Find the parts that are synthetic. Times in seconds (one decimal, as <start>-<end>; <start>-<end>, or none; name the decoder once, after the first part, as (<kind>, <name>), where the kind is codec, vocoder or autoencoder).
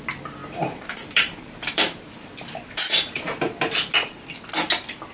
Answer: 0.4-3.5 (vocoder, BigVGAN v2)